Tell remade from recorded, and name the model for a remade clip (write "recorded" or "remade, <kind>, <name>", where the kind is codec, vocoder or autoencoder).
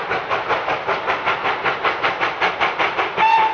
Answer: recorded